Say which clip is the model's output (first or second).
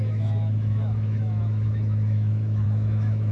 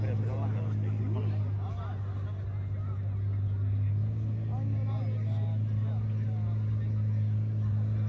first